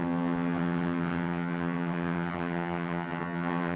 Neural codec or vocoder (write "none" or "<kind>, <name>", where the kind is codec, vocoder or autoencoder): vocoder, HiFi-GAN